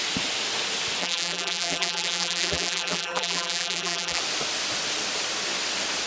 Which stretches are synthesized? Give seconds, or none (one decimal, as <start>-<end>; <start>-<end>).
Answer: 1.0-4.2